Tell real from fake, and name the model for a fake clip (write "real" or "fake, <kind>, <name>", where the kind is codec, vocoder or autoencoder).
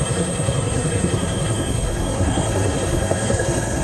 fake, codec, SNAC